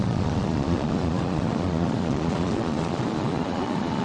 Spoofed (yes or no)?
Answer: yes